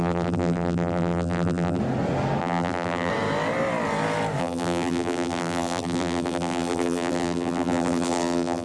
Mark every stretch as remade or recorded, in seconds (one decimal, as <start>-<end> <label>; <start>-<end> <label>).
0.0-1.8 remade; 1.8-2.4 recorded; 2.4-3.1 remade; 3.1-4.4 recorded; 4.4-8.6 remade